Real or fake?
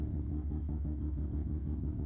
fake